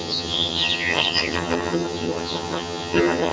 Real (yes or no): no